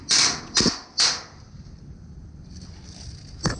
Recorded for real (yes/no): yes